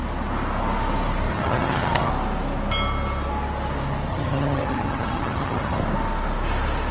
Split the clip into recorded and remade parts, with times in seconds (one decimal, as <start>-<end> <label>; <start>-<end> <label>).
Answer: 0.0-1.3 recorded; 1.3-2.1 remade; 2.1-4.1 recorded; 4.1-5.8 remade; 5.8-6.9 recorded